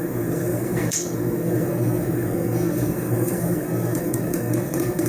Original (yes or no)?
no